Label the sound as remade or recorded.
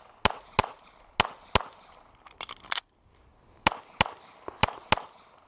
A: recorded